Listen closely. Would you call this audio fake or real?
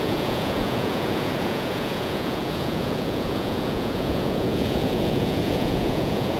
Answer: fake